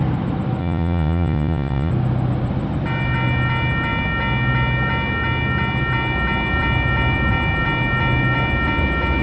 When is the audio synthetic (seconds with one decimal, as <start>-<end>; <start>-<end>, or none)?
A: 0.6-1.9